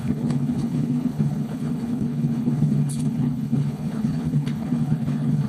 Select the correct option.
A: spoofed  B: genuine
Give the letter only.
A